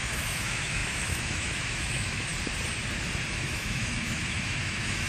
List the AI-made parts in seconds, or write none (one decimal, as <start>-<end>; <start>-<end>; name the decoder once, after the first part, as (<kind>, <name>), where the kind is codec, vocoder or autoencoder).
0.0-2.3 (autoencoder, DAC-VAE); 3.3-5.1